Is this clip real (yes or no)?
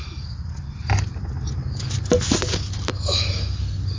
yes